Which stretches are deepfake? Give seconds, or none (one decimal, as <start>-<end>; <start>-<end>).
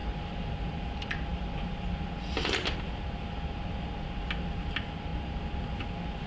none